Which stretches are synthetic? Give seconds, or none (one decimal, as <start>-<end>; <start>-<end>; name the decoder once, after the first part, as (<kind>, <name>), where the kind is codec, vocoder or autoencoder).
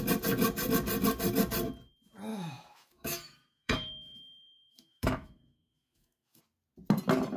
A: 2.3-6.4 (autoencoder, DAC-VAE)